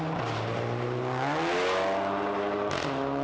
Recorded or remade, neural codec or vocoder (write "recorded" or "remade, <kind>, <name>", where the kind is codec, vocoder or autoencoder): recorded